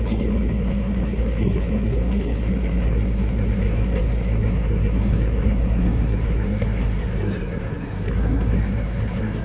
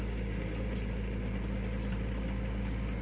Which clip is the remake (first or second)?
first